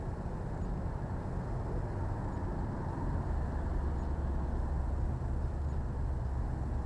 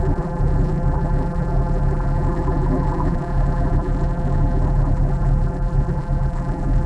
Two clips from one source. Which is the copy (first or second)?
second